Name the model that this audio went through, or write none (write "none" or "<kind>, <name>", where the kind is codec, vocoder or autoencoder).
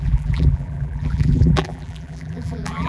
vocoder, BigVGAN v2